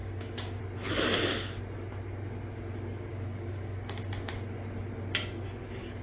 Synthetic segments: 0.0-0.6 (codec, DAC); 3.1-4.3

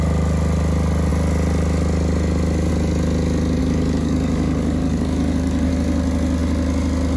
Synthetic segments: 3.6-5.7 (codec, DAC)

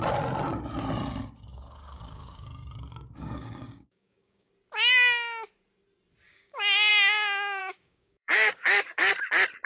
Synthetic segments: 1.5-4.5 (codec, DAC); 6.3-6.9; 7.6-9.1

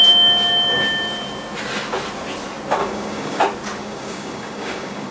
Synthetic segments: 2.8-3.4 (codec, DAC); 3.8-5.1

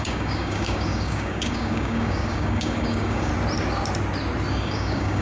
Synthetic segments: 0.0-3.3 (codec, DAC); 4.5-5.2

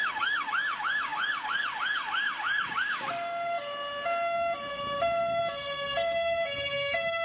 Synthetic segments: 0.0-7.2 (codec, DAC)

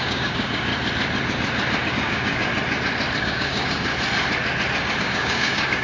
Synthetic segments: 0.0-0.7 (codec, DAC); 1.9-2.5; 3.2-3.9; 5.0-5.8

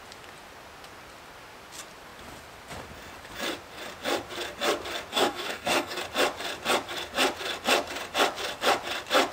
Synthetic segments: 5.1-6.0 (codec, DAC)